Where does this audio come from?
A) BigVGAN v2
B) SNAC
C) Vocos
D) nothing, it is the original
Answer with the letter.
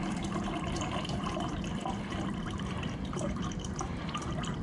A